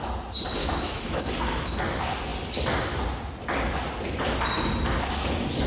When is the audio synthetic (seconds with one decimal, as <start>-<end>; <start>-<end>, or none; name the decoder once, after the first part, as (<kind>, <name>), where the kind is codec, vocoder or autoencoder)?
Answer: 0.6-1.3 (autoencoder, DAC-VAE)